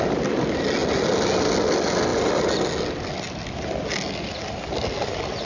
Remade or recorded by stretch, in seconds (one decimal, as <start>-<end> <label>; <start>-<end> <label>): 0.0-5.4 recorded

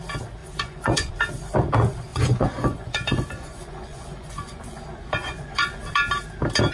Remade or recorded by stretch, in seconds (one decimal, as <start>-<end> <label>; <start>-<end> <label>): 0.0-0.4 recorded; 0.4-1.1 remade; 1.1-2.1 recorded; 2.1-5.8 remade; 5.8-6.7 recorded